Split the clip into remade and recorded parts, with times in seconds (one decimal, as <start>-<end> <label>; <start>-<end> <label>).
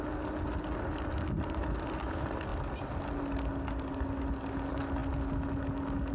0.0-6.1 recorded